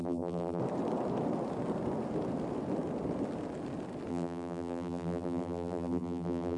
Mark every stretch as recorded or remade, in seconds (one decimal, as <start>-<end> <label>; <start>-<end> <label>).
0.0-0.6 remade; 0.6-4.1 recorded; 4.1-6.6 remade